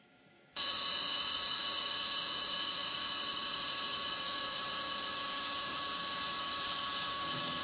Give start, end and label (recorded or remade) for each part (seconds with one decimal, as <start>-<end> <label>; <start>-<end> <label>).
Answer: 0.0-7.6 remade